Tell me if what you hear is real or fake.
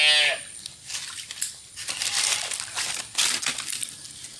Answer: real